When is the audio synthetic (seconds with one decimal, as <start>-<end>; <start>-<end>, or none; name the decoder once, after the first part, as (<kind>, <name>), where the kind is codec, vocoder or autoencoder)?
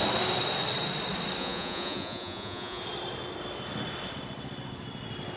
1.4-2.8 (vocoder, Vocos)